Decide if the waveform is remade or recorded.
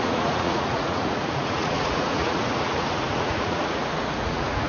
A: remade